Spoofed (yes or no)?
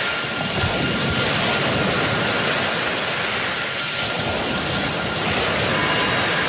no